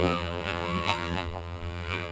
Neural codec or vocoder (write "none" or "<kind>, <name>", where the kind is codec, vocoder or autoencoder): vocoder, BigVGAN v2